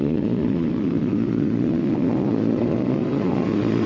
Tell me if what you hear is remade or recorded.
remade